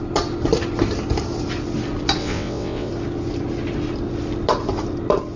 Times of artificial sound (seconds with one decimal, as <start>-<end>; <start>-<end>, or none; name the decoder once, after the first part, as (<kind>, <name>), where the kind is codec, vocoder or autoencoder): 2.2-2.9 (vocoder, WaveNeXt)